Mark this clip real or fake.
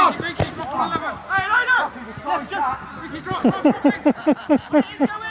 real